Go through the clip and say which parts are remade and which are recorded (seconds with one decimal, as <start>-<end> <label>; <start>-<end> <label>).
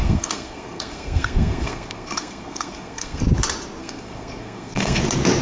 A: 0.0-3.2 remade; 3.2-3.8 recorded; 3.8-5.0 remade; 5.0-5.4 recorded